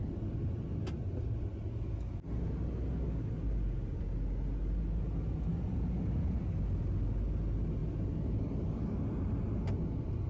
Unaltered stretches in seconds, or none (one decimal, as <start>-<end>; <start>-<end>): 0.0-10.3

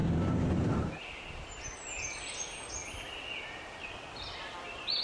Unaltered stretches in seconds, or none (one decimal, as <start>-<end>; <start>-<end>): 0.0-5.0

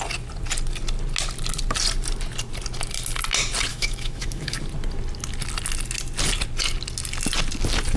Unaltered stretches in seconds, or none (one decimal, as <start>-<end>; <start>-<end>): 0.0-3.7; 4.6-8.0

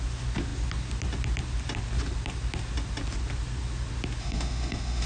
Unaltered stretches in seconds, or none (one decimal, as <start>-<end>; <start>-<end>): 0.0-4.2

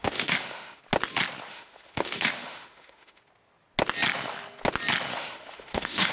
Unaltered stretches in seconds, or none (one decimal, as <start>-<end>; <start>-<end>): 0.8-1.5; 3.2-5.1

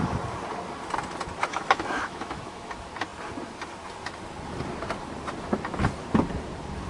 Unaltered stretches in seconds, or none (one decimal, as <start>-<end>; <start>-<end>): 0.0-1.4; 2.7-6.9

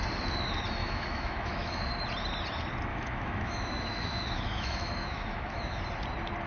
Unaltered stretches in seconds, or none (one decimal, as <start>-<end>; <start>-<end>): 0.0-0.8; 1.8-2.9; 5.8-6.5

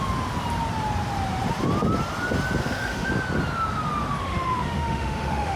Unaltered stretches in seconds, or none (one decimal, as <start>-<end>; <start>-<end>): 0.0-2.6; 3.1-4.2